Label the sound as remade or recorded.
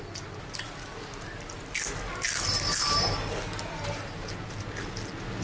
recorded